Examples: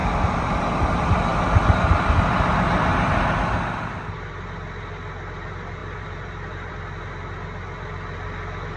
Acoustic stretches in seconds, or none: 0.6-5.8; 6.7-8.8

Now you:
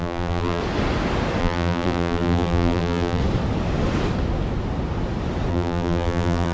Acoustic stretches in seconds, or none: 0.6-1.4; 3.2-5.5

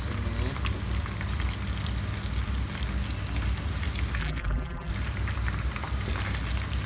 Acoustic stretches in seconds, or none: 0.0-4.2; 4.9-6.9

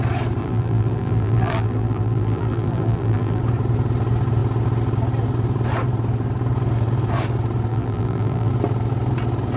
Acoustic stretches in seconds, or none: 0.0-0.4; 3.4-7.7; 8.5-9.6

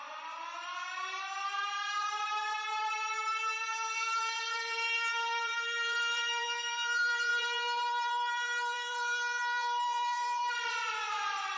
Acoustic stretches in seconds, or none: none

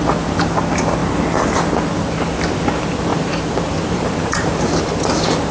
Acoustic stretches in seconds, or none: 0.0-3.1; 4.7-5.5